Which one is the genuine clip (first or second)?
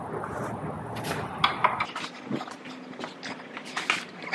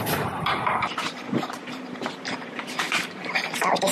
first